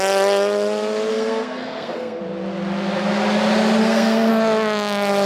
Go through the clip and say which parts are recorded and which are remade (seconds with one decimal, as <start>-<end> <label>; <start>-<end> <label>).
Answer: 0.0-1.1 recorded; 1.1-2.2 remade; 2.2-3.8 recorded; 3.8-4.3 remade; 4.3-5.3 recorded